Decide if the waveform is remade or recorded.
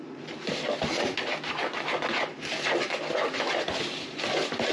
remade